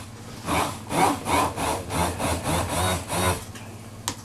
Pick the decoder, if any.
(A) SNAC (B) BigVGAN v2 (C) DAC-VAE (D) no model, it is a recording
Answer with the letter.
D